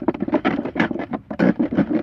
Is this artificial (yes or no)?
yes